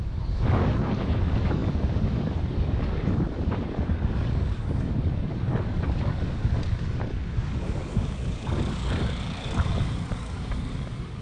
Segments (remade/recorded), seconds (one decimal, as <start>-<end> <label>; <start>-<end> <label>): 0.0-11.2 remade

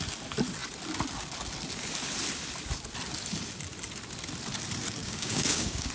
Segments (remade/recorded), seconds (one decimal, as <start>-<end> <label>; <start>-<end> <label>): 0.0-5.0 recorded; 5.0-5.9 remade